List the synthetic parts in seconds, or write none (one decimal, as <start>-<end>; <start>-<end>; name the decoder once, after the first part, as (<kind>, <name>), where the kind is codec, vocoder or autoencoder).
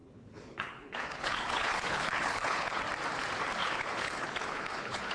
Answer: 0.0-2.8 (codec, HILCodec); 3.6-5.1